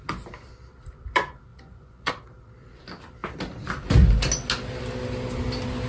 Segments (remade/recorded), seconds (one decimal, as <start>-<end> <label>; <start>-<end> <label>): 0.0-1.5 recorded; 1.5-2.1 remade; 2.1-5.9 recorded